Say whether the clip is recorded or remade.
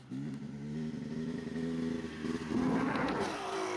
recorded